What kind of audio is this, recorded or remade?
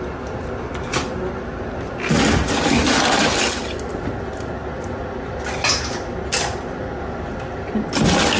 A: recorded